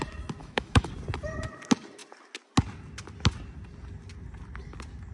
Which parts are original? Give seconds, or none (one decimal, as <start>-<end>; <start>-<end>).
0.0-0.4; 0.9-5.1